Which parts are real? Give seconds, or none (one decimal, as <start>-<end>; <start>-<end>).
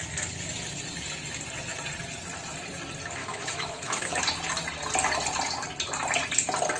0.0-3.2; 4.2-6.8